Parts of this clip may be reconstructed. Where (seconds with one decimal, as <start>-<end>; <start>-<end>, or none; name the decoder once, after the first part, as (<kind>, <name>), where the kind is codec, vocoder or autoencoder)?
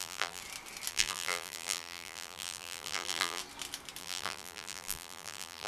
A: 0.0-0.4 (vocoder, BigVGAN v2); 0.9-3.4; 4.0-5.7